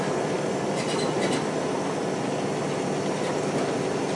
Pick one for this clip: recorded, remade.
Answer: recorded